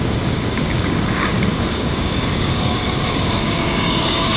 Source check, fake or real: fake